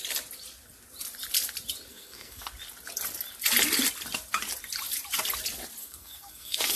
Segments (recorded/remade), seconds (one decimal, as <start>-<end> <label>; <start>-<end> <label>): 0.0-1.9 recorded; 1.9-2.5 remade; 2.5-5.8 recorded; 5.8-6.8 remade